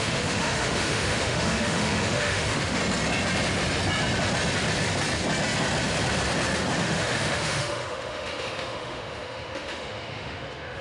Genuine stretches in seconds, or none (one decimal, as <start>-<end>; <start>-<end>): 2.8-6.8